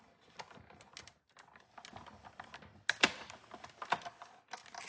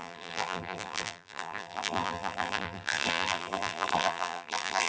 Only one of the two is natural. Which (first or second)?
first